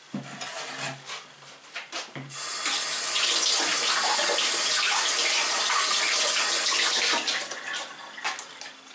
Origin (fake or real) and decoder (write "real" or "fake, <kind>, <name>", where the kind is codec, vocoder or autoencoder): real